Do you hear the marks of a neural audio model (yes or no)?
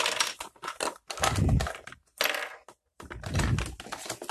no